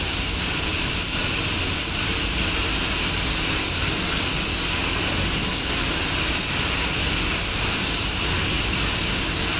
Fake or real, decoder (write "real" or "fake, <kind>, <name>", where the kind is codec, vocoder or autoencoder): real